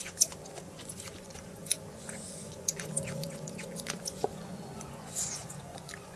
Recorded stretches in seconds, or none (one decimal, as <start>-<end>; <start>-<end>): none